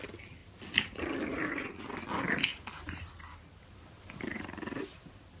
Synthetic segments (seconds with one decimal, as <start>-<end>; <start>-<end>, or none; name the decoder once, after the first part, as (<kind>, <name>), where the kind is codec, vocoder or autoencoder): none